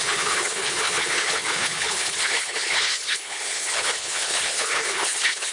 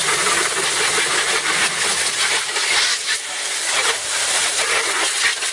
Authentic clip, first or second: second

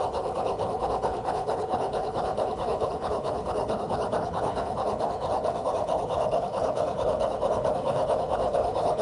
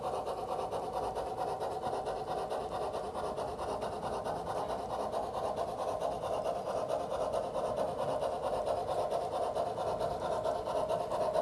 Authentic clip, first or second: second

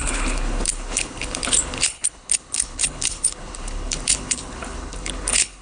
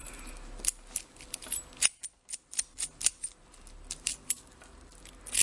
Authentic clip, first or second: second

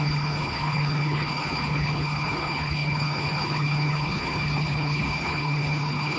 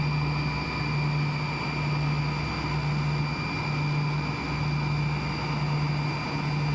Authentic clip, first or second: second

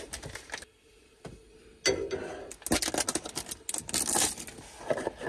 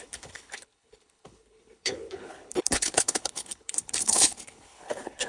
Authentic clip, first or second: first